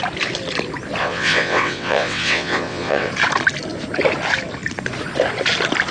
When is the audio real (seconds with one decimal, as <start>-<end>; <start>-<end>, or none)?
0.0-1.0; 3.1-5.9